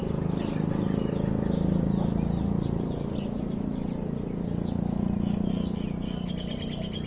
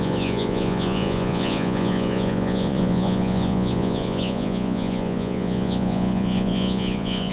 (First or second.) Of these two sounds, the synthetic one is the second